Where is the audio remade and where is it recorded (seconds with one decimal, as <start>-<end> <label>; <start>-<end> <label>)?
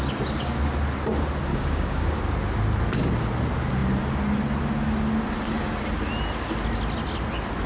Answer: 0.0-1.5 recorded; 1.5-2.2 remade; 2.2-7.7 recorded